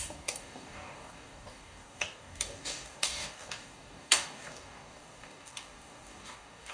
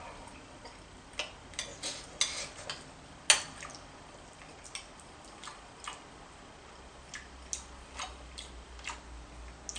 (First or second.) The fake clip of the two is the first